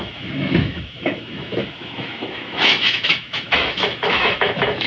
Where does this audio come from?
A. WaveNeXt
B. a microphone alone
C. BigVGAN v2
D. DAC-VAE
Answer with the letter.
D